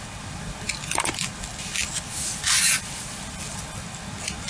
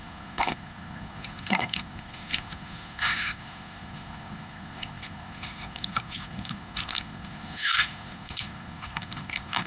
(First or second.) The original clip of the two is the first